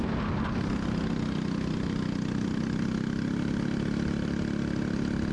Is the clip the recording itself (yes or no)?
yes